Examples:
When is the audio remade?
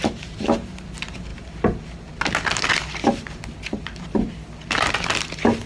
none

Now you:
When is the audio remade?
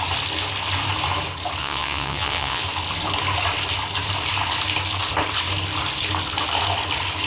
1.6-2.6 (vocoder, WaveNeXt)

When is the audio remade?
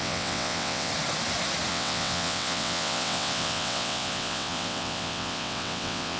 0.0-0.9 (vocoder, WaveNeXt); 1.7-6.2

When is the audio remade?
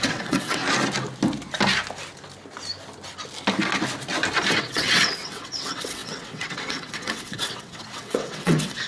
0.0-0.6 (vocoder, WaveNeXt); 4.5-8.9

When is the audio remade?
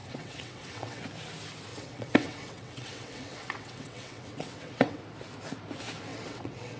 0.0-1.0 (vocoder, WaveNeXt); 1.7-5.0; 6.1-6.8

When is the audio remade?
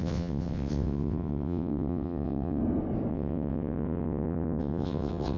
0.0-2.6 (vocoder, WaveNeXt); 3.1-5.4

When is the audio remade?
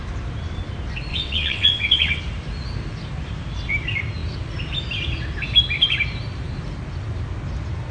1.1-2.2 (vocoder, WaveNeXt)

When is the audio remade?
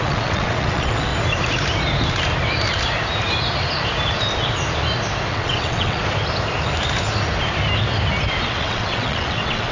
0.0-1.1 (vocoder, WaveNeXt); 5.3-6.0; 8.5-9.7